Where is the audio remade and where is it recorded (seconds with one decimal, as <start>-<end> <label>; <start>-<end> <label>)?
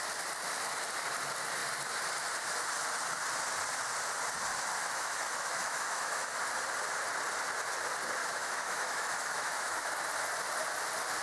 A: 0.0-4.8 recorded; 4.8-6.4 remade; 6.4-8.2 recorded; 8.2-9.9 remade; 9.9-11.2 recorded